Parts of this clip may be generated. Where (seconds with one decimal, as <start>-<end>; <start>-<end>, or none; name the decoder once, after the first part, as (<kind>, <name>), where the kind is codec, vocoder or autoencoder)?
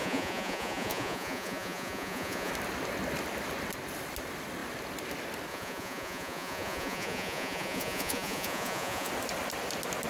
0.0-2.5 (vocoder, Vocos); 5.5-9.1